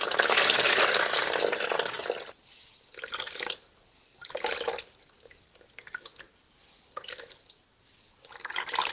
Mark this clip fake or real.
real